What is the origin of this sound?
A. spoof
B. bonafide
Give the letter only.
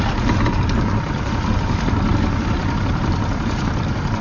A